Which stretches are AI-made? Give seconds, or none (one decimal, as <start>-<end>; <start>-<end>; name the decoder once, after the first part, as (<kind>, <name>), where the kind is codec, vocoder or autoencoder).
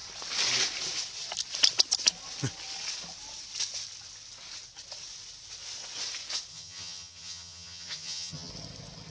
6.5-8.5 (vocoder, HiFi-GAN)